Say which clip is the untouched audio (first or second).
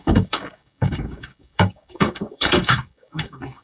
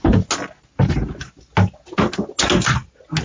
second